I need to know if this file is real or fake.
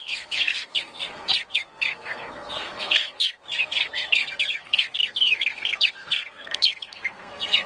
fake